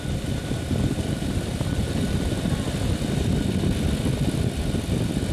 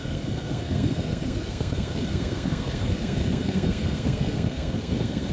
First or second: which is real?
first